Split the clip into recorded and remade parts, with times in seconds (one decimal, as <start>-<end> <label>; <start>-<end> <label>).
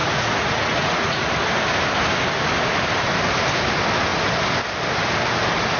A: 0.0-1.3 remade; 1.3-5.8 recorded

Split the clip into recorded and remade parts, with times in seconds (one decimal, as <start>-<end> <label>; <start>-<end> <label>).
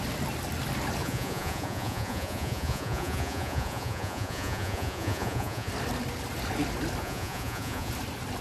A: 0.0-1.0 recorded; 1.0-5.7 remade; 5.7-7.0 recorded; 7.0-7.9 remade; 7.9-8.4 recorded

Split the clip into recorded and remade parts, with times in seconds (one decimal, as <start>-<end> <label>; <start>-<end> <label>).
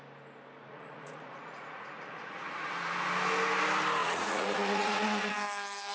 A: 0.0-0.6 recorded; 0.6-2.9 remade; 2.9-4.0 recorded; 4.0-5.3 remade; 5.3-5.9 recorded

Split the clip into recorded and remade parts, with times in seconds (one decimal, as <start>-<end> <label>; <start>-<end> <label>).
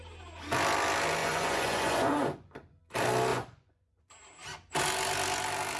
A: 0.0-1.2 recorded; 1.2-2.8 remade; 2.8-3.3 recorded; 3.3-4.0 remade; 4.0-5.8 recorded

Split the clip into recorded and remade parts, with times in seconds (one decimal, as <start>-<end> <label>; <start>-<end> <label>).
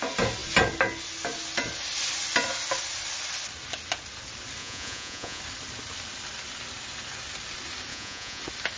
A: 0.0-4.6 recorded; 4.6-5.4 remade; 5.4-7.9 recorded; 7.9-8.4 remade; 8.4-8.8 recorded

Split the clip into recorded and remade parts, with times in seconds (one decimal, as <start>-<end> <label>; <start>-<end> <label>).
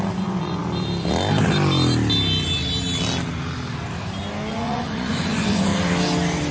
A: 0.0-0.6 remade; 0.6-4.5 recorded; 4.5-5.7 remade; 5.7-6.5 recorded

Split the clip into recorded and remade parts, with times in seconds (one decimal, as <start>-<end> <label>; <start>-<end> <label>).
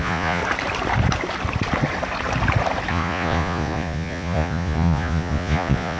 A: 0.0-0.4 remade; 0.4-2.9 recorded; 2.9-6.0 remade